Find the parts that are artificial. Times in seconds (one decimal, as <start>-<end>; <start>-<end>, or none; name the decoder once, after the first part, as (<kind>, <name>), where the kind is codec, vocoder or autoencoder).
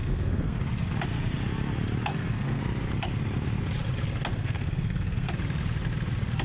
0.0-0.6 (codec, SNAC); 2.1-2.6; 4.3-5.3